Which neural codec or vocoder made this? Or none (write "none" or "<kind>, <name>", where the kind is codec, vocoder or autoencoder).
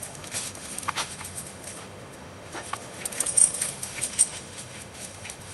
autoencoder, DAC-VAE